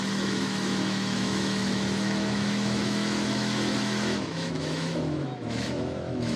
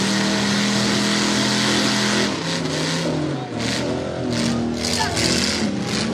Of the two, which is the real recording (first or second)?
second